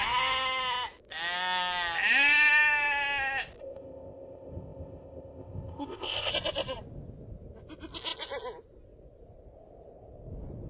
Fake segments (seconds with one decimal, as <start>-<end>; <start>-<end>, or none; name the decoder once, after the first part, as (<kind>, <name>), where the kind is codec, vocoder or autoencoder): 3.6-6.3 (codec, ZipCodec)